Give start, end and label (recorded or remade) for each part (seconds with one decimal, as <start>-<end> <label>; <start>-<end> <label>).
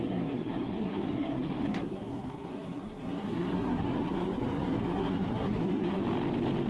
0.0-6.0 remade; 6.0-6.7 recorded